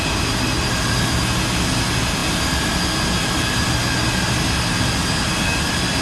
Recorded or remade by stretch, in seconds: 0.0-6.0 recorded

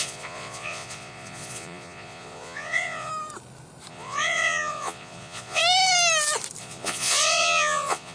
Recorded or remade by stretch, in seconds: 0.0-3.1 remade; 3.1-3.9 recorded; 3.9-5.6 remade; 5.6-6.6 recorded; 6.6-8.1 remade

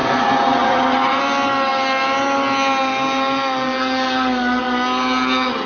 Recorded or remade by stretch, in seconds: 0.0-1.2 remade; 1.2-5.7 recorded

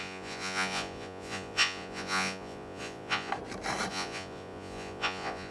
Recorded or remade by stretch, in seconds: 0.0-3.3 remade; 3.3-3.9 recorded; 3.9-5.5 remade

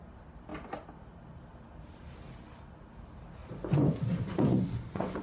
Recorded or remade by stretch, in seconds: 0.0-3.4 recorded; 3.4-5.2 remade

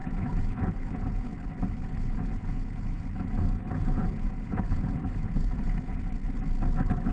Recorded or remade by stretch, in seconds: 0.0-1.3 remade; 1.3-1.8 recorded; 1.8-6.1 remade; 6.1-7.1 recorded

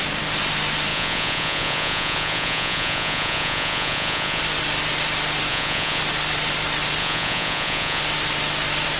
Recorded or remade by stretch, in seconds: 0.0-0.9 recorded; 0.9-4.4 remade; 4.4-5.5 recorded; 5.5-6.0 remade; 6.0-7.0 recorded; 7.0-8.0 remade; 8.0-9.0 recorded